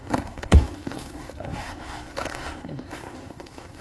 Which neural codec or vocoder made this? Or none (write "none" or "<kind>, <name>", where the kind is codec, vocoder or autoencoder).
codec, SNAC